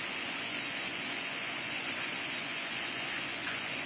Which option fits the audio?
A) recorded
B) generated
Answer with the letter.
B